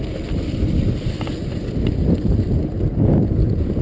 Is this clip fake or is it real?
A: real